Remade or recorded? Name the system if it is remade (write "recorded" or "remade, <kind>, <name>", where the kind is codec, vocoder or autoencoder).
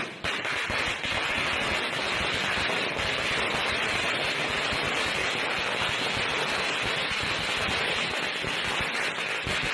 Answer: recorded